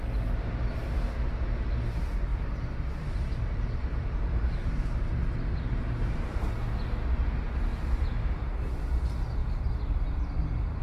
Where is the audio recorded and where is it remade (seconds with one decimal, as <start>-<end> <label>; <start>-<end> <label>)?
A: 0.0-2.3 recorded; 2.3-5.8 remade; 5.8-9.4 recorded; 9.4-10.0 remade; 10.0-10.8 recorded